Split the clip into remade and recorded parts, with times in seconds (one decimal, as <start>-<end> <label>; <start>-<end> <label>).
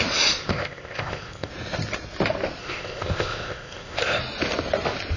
0.0-0.4 recorded; 0.4-1.5 remade; 1.5-2.6 recorded; 2.6-4.2 remade; 4.2-5.2 recorded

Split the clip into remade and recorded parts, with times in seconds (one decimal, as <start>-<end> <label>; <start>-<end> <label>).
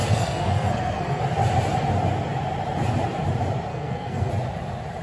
0.0-1.2 remade; 1.2-3.7 recorded; 3.7-4.3 remade; 4.3-5.0 recorded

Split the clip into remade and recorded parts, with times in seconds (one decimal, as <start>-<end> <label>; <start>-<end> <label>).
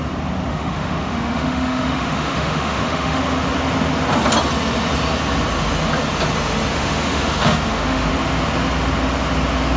0.0-0.5 recorded; 0.5-3.2 remade; 3.2-6.7 recorded; 6.7-8.1 remade; 8.1-9.8 recorded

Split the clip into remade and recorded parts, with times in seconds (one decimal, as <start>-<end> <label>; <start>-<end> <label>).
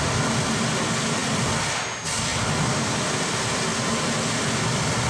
0.0-5.1 recorded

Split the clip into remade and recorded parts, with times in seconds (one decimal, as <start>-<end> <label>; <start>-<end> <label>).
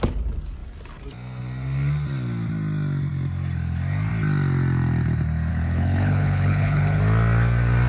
0.0-5.5 recorded; 5.5-7.0 remade; 7.0-7.9 recorded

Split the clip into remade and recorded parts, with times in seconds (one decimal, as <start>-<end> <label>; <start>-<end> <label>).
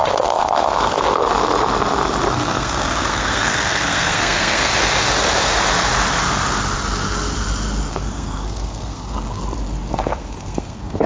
0.0-1.2 remade; 1.2-2.3 recorded; 2.3-4.7 remade; 4.7-7.9 recorded; 7.9-9.4 remade; 9.4-9.9 recorded; 9.9-11.1 remade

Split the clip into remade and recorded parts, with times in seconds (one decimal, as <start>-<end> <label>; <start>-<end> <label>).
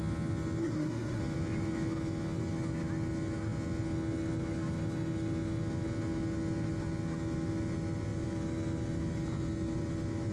0.0-0.6 recorded; 0.6-1.2 remade; 1.2-10.3 recorded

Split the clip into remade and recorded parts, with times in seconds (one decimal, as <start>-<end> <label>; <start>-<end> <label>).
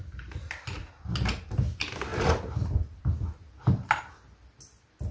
0.0-5.1 recorded